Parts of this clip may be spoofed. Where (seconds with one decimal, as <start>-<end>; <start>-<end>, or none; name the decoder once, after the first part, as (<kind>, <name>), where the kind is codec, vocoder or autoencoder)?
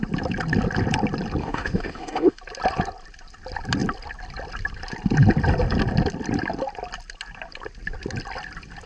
1.4-2.4 (autoencoder, DAC-VAE)